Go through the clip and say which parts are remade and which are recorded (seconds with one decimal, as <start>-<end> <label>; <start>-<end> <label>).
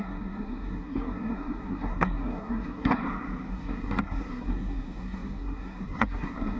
0.0-3.0 remade; 3.0-3.5 recorded; 3.5-6.6 remade